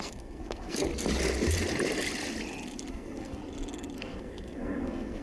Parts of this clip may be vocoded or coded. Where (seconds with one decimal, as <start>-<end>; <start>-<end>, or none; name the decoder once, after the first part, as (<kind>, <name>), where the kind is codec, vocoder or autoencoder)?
0.0-0.9 (codec, SNAC); 2.9-3.4; 4.0-5.2